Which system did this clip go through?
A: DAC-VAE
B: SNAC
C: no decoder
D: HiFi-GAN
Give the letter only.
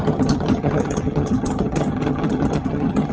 D